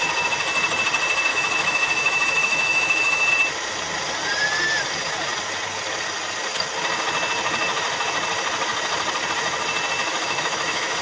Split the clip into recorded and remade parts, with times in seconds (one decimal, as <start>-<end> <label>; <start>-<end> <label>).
0.0-1.3 recorded; 1.3-3.3 remade; 3.3-10.0 recorded; 10.0-11.0 remade